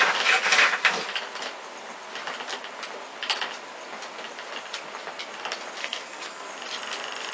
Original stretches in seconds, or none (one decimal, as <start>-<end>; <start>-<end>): 0.0-5.8; 6.5-7.3